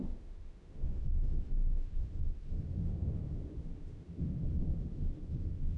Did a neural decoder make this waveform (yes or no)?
yes